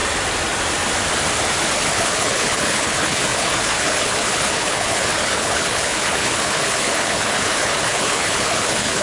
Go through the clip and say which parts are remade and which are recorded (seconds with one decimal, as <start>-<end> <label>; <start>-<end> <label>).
0.0-1.9 recorded; 1.9-9.0 remade